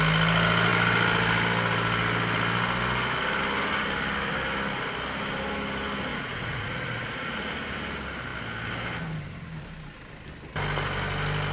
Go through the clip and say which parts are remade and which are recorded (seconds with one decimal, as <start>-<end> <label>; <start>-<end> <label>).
0.0-6.1 recorded; 6.1-7.5 remade; 7.5-11.5 recorded